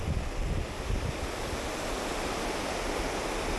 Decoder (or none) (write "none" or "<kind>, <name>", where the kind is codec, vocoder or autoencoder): vocoder, BigVGAN v2